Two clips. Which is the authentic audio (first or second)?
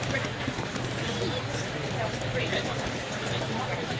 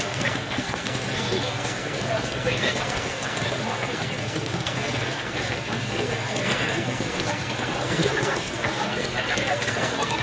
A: first